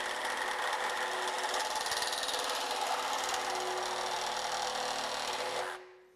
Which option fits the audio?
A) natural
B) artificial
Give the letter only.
A